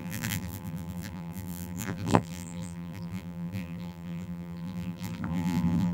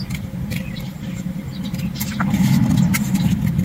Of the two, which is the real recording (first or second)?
second